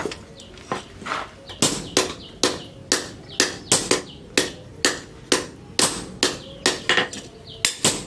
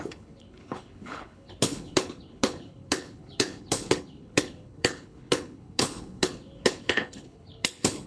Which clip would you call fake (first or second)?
second